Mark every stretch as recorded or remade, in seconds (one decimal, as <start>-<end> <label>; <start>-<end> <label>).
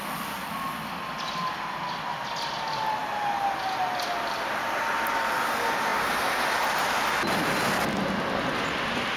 0.0-9.2 recorded